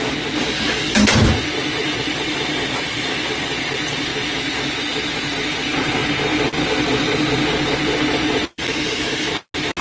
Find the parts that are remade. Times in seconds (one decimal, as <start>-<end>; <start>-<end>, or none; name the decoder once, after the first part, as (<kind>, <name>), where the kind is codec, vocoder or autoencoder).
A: 0.4-1.1 (codec, DAC); 8.5-9.3